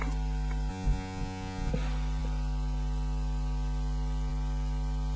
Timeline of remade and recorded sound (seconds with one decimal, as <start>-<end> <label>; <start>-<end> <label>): 0.0-0.7 recorded; 0.7-1.7 remade; 1.7-5.2 recorded